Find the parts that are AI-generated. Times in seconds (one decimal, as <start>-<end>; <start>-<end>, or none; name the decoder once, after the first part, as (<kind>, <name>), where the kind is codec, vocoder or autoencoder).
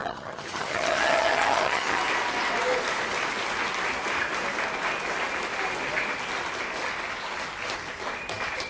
0.0-2.0 (vocoder, HiFi-GAN)